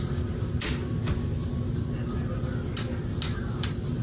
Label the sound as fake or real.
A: real